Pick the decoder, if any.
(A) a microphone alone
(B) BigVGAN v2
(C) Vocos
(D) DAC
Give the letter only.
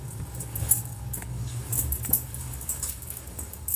D